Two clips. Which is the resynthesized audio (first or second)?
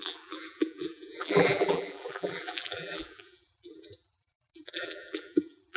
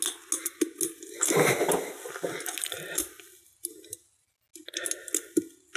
first